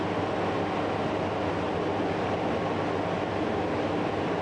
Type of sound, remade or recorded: recorded